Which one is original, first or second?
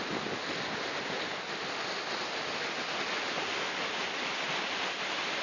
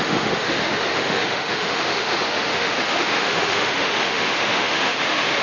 first